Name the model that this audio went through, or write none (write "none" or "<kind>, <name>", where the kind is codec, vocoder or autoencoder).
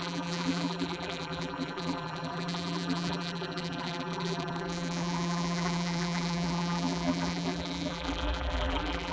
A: vocoder, BigVGAN v2